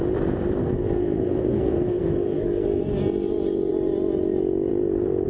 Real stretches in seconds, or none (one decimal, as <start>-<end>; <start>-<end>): 0.0-0.6; 2.8-5.3